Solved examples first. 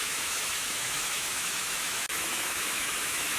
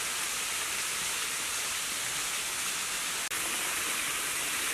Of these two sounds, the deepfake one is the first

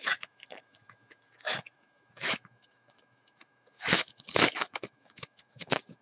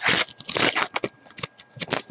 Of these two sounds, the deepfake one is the first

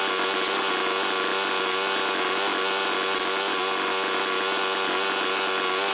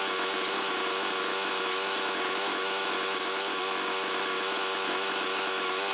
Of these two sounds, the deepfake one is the second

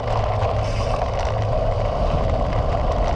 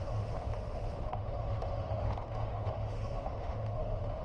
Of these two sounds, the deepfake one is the second